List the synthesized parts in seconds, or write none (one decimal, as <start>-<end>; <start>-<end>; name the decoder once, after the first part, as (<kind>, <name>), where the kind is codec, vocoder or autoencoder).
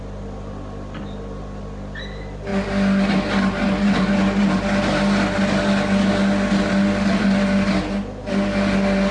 none